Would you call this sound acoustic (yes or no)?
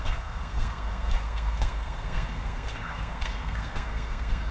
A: no